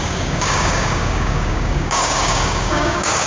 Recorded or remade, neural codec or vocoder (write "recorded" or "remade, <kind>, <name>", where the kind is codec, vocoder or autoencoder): remade, codec, DAC